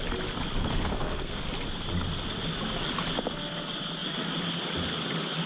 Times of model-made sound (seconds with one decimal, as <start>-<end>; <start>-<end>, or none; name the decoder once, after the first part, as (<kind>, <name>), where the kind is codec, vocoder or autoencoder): 0.6-1.4 (codec, SNAC)